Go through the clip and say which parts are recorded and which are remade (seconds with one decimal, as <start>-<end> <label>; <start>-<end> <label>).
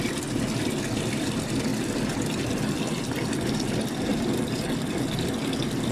0.0-1.7 recorded; 1.7-5.2 remade; 5.2-5.9 recorded